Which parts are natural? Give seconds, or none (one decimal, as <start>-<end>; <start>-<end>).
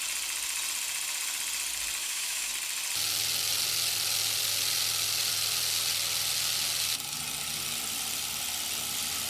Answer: 0.0-2.0; 2.5-9.3